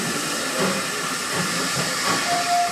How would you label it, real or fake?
fake